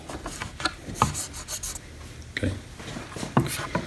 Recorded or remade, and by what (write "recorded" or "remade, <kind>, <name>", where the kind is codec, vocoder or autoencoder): recorded